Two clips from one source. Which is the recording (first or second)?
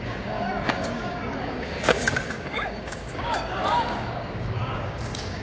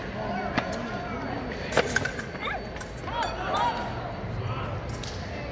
second